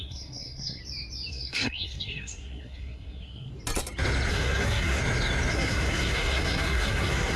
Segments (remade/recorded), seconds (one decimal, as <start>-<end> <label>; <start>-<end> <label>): 0.0-0.8 remade; 0.8-1.3 recorded; 1.3-3.5 remade; 3.5-4.3 recorded; 4.3-5.0 remade; 5.0-5.5 recorded; 5.5-7.4 remade